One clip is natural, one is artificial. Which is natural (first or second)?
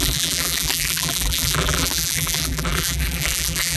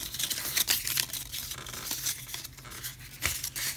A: second